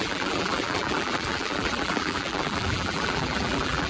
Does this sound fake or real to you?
fake